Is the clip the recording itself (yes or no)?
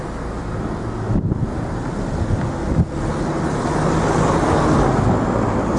yes